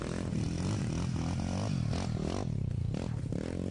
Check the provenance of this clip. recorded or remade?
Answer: recorded